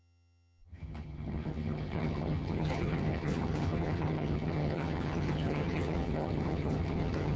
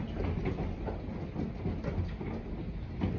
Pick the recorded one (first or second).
second